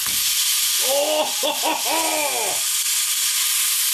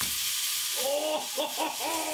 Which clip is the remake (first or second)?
second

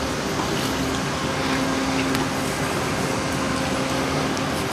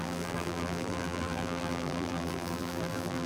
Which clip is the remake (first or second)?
second